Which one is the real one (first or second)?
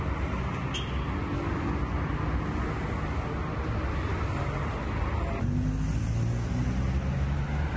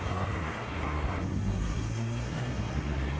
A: first